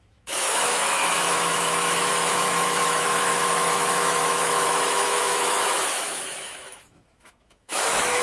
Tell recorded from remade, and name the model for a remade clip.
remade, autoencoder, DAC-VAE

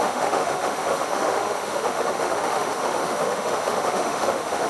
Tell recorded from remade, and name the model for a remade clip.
remade, autoencoder, DAC-VAE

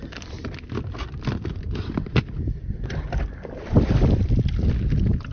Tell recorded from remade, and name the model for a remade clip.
recorded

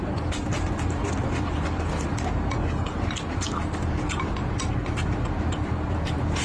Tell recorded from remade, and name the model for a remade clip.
recorded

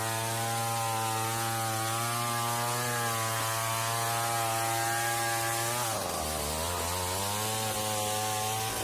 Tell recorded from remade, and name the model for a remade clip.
recorded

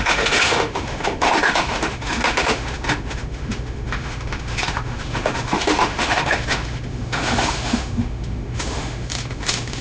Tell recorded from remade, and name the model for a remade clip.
remade, autoencoder, DAC-VAE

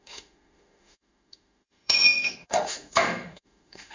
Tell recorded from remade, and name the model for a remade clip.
remade, autoencoder, DAC-VAE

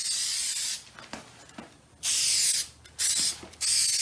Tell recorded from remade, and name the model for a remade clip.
recorded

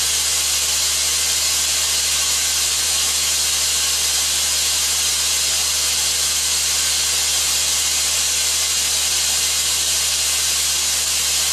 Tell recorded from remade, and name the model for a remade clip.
recorded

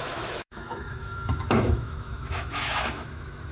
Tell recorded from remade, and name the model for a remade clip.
remade, autoencoder, DAC-VAE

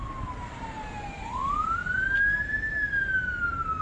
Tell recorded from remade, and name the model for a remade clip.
recorded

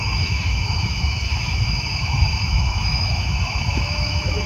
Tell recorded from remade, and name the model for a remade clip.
remade, autoencoder, DAC-VAE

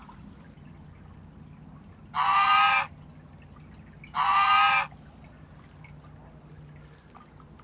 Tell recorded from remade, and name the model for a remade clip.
recorded